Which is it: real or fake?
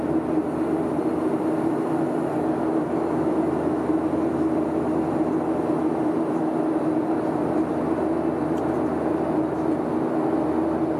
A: real